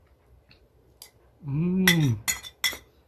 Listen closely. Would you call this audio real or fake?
real